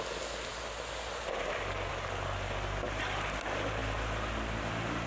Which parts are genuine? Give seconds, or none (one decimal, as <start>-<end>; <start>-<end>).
0.0-5.1